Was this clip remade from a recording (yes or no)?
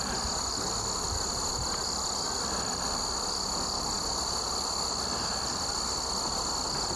no